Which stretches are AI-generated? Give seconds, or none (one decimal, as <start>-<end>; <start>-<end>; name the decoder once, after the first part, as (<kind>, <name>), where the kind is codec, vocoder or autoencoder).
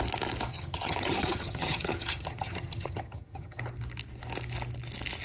0.5-3.6 (vocoder, HiFi-GAN)